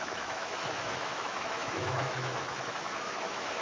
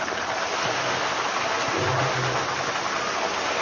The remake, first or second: first